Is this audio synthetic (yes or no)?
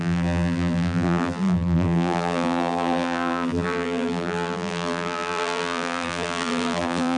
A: yes